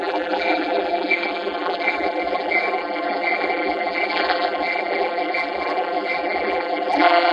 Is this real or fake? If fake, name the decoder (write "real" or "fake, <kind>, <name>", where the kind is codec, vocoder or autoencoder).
fake, vocoder, BigVGAN v2